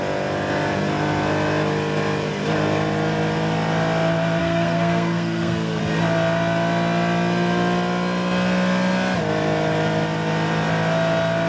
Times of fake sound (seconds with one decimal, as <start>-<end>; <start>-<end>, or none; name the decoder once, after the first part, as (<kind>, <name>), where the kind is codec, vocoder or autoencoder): 4.4-5.8 (codec, SNAC)

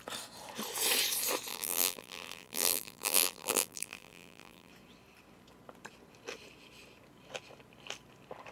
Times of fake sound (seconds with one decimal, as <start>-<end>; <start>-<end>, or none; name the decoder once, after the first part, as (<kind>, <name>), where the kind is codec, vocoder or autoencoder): 1.5-4.7 (vocoder, BigVGAN v2)

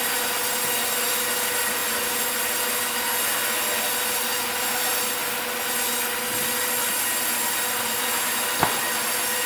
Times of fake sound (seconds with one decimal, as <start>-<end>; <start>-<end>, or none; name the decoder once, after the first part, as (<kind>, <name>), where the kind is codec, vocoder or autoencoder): 1.8-2.6 (vocoder, BigVGAN v2)

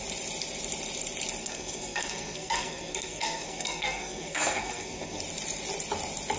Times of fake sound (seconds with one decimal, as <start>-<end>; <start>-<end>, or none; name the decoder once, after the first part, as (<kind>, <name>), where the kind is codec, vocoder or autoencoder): 1.4-5.2 (codec, SNAC)

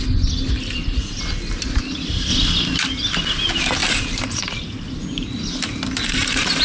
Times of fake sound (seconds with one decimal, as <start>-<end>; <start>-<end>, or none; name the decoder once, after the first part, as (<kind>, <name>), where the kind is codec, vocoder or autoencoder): 3.8-4.4 (vocoder, BigVGAN v2)